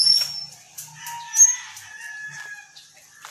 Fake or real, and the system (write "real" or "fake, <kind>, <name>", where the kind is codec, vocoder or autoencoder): real